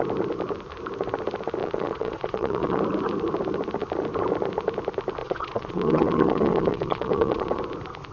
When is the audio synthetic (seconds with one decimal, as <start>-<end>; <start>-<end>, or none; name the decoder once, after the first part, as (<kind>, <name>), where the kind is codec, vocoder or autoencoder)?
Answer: 1.6-2.8 (vocoder, Vocos); 5.2-7.6